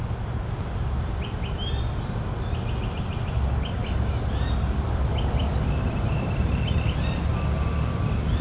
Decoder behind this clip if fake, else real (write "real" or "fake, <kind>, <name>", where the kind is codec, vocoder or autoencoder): real